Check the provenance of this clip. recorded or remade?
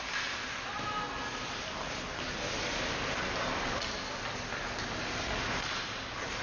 recorded